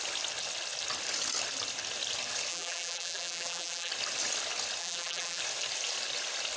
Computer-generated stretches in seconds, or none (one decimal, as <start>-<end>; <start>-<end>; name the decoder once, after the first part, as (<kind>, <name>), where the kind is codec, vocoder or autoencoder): 2.5-3.9 (vocoder, BigVGAN v2); 4.8-5.4